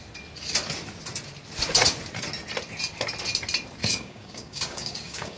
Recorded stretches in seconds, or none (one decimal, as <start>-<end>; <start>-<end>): 0.0-3.8